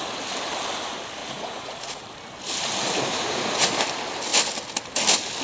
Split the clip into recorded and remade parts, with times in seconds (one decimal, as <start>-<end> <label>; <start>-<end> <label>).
0.0-1.2 recorded; 1.2-2.0 remade; 2.0-3.1 recorded; 3.1-3.7 remade; 3.7-5.4 recorded